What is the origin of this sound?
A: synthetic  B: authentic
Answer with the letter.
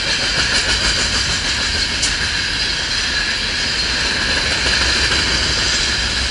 B